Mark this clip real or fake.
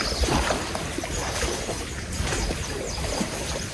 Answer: real